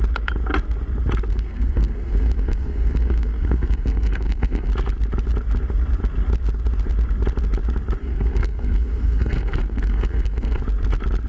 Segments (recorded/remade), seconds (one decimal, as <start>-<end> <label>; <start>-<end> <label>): 0.0-1.3 recorded; 1.3-4.7 remade; 4.7-8.0 recorded; 8.0-10.6 remade; 10.6-11.3 recorded